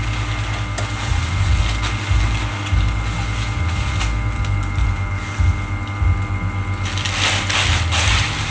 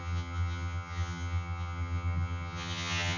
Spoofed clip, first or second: second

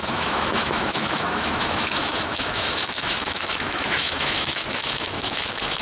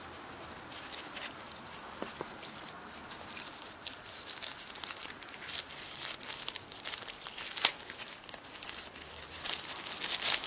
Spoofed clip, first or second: first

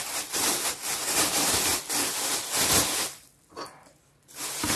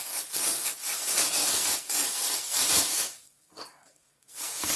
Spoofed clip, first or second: second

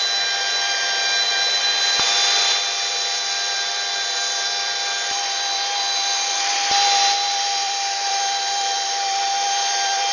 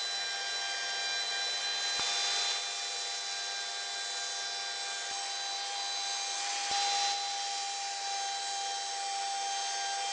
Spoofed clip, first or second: first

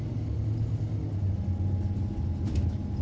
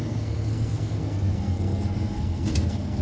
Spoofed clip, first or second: second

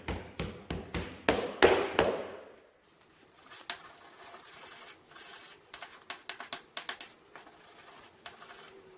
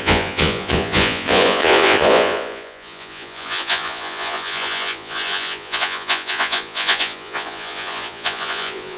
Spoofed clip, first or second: second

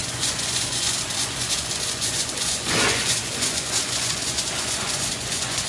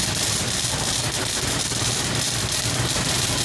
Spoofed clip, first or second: first